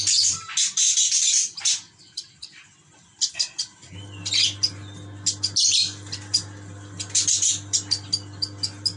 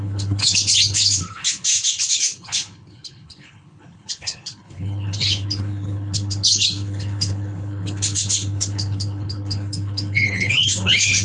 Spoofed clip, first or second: second